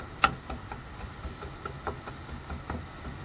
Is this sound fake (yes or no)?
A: no